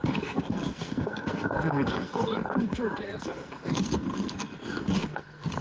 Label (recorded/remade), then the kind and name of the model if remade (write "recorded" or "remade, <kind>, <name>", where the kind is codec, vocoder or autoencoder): remade, codec, SNAC